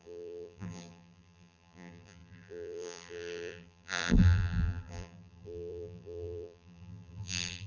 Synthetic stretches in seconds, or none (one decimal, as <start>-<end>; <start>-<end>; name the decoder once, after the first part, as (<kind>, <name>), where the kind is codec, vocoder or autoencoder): 0.0-7.7 (vocoder, BigVGAN v2)